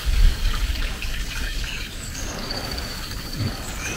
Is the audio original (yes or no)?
no